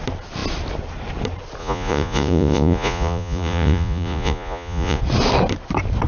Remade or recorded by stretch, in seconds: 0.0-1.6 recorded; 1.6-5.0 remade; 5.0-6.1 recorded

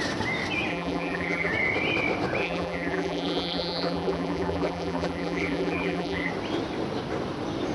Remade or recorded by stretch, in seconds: 0.0-0.7 recorded; 0.7-1.5 remade; 1.5-2.4 recorded; 2.4-6.3 remade; 6.3-7.7 recorded

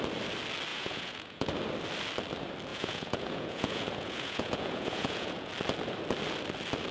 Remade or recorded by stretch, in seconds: 0.0-0.7 recorded; 0.7-1.5 remade; 1.5-2.7 recorded; 2.7-5.5 remade; 5.5-6.9 recorded

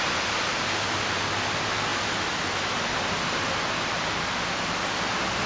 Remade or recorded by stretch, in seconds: 0.0-5.5 recorded

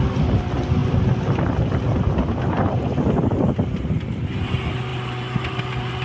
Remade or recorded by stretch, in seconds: 0.0-6.0 recorded

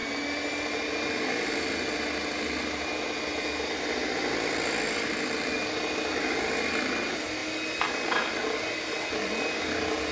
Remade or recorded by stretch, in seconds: 0.0-10.1 recorded

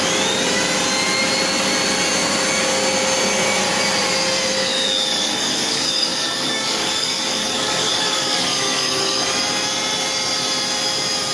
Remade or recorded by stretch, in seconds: 0.0-4.6 recorded; 4.6-9.2 remade; 9.2-11.3 recorded

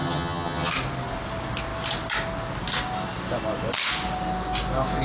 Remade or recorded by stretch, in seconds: 0.0-0.7 remade; 0.7-5.0 recorded